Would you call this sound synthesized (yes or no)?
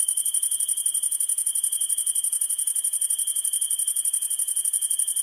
no